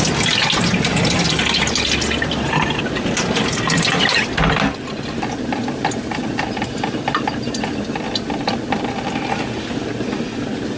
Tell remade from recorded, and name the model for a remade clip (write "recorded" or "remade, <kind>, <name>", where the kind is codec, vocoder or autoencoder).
recorded